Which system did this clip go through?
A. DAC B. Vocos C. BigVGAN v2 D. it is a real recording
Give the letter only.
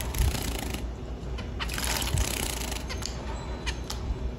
D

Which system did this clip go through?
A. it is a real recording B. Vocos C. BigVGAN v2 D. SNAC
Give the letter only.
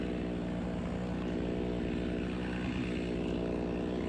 A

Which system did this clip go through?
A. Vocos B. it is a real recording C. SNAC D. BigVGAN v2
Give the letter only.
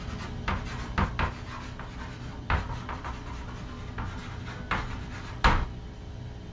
B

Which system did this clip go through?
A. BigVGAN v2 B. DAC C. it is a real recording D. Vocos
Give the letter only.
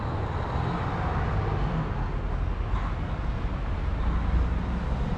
C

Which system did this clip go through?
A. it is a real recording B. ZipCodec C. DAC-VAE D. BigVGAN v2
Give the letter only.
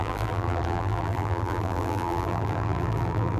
D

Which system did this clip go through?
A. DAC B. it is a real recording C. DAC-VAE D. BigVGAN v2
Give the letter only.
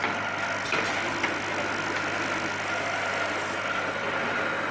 B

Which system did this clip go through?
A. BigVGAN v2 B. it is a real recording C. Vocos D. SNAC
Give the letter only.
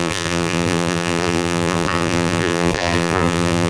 A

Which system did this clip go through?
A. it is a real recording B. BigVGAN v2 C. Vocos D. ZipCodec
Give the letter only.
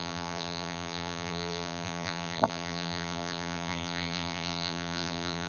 B